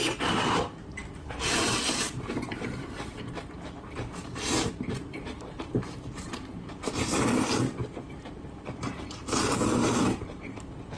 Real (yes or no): no